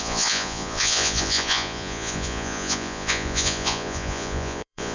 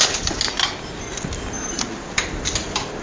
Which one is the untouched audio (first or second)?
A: second